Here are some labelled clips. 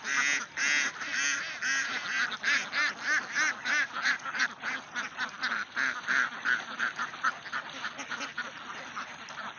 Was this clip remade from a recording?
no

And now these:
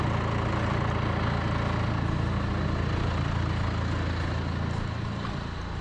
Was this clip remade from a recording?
no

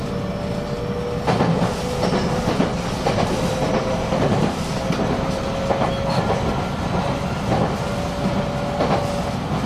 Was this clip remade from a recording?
no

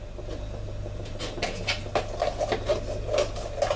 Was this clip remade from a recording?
no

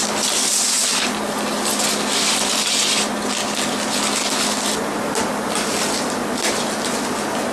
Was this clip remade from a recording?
no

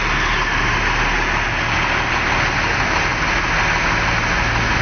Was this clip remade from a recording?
no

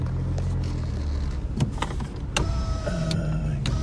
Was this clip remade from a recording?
no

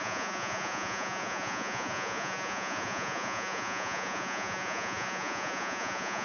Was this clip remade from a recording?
yes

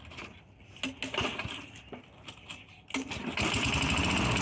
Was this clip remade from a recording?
no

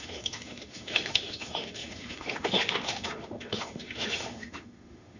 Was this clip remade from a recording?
yes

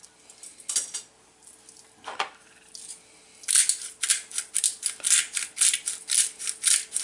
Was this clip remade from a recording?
no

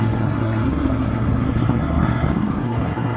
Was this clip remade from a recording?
yes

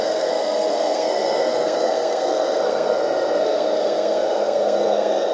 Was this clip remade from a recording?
yes